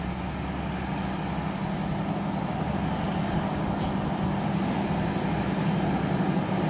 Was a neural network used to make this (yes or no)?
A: no